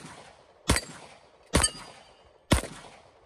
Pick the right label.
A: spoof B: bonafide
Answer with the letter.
B